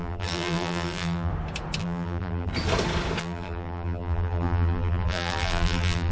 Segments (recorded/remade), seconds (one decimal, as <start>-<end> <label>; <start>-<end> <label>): 0.0-1.3 remade; 1.3-1.8 recorded; 1.8-2.5 remade; 2.5-3.2 recorded; 3.2-6.1 remade